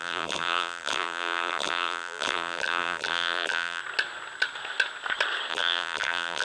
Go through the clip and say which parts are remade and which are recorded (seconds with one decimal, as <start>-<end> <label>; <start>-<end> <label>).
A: 0.0-3.8 remade; 3.8-5.5 recorded; 5.5-6.4 remade